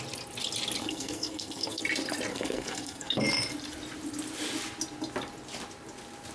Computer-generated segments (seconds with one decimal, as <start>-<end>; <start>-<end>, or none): 0.8-1.8; 2.3-3.2